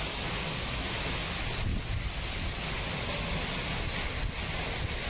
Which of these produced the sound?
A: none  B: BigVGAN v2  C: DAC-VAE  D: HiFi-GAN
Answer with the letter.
A